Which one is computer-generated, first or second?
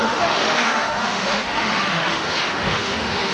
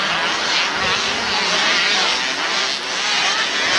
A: first